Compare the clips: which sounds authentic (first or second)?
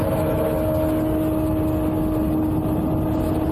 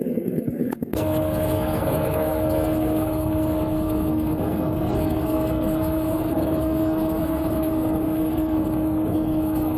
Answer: first